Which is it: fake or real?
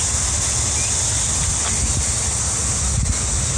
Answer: real